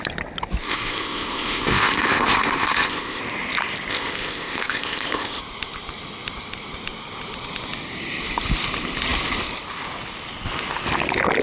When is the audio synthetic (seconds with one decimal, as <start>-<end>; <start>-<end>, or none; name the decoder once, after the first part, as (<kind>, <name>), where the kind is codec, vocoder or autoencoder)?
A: 0.6-3.2 (codec, ZipCodec); 3.9-5.4